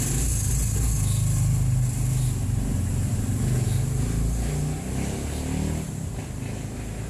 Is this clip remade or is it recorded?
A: recorded